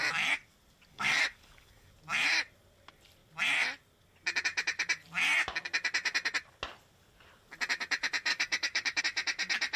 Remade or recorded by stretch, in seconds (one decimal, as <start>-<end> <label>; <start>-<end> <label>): 0.0-0.9 recorded; 0.9-1.9 remade; 1.9-8.3 recorded; 8.3-9.0 remade; 9.0-9.8 recorded

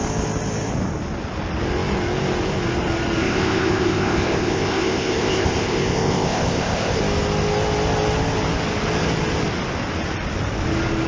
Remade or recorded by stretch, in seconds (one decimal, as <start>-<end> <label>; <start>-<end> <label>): 0.0-3.2 recorded; 3.2-7.0 remade; 7.0-11.1 recorded

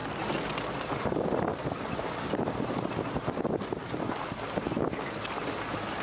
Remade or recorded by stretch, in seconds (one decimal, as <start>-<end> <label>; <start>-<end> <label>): 0.0-6.0 recorded

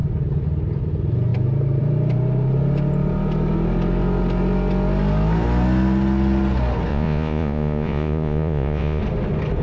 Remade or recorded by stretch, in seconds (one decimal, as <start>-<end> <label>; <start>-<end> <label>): 0.0-6.9 recorded; 6.9-9.0 remade; 9.0-9.6 recorded

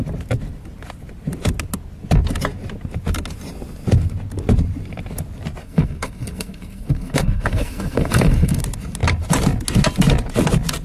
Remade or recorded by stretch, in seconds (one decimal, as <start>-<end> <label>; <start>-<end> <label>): 0.0-5.6 recorded; 5.6-8.6 remade; 8.6-10.8 recorded

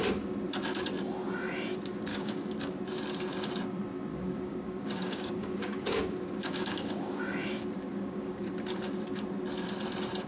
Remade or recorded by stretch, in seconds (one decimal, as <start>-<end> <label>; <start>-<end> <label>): 0.0-2.1 recorded; 2.1-2.8 remade; 2.8-4.1 recorded; 4.1-7.2 remade; 7.2-7.9 recorded; 7.9-8.5 remade; 8.5-10.3 recorded

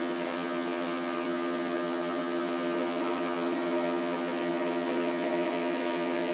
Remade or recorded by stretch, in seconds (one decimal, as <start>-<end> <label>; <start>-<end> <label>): 0.0-6.3 remade

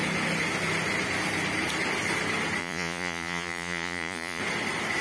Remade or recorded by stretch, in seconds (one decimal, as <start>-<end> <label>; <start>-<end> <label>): 0.0-2.6 recorded; 2.6-4.4 remade; 4.4-5.0 recorded